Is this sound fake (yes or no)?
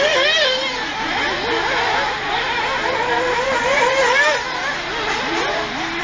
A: no